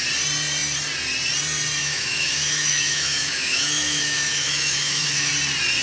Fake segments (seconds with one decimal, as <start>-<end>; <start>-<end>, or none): 1.8-5.3